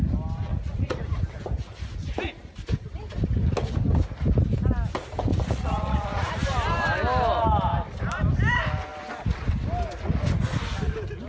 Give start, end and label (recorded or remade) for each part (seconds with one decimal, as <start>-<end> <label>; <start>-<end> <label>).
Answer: 0.0-0.5 recorded; 0.5-1.0 remade; 1.0-5.3 recorded; 5.3-6.3 remade; 6.3-11.3 recorded